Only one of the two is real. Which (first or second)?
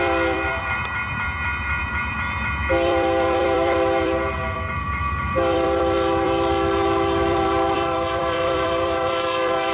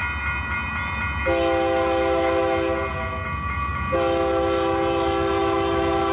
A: second